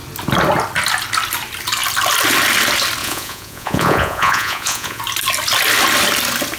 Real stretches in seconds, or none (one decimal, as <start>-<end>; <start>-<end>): 0.0-3.0; 5.0-6.6